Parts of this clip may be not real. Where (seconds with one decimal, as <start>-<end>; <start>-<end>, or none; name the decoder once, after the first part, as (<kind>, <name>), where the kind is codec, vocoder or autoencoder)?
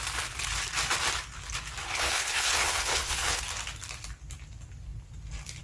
1.8-3.4 (codec, HILCodec)